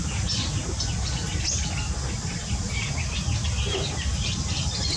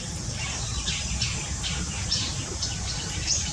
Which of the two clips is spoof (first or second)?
second